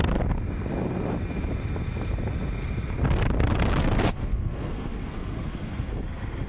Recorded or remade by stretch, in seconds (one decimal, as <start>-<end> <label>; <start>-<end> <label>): 0.0-4.1 recorded; 4.1-6.0 remade; 6.0-6.5 recorded